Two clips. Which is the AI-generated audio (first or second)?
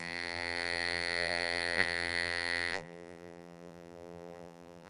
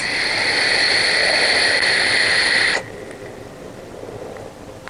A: first